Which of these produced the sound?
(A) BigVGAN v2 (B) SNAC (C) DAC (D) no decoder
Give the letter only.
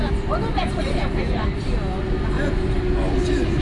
D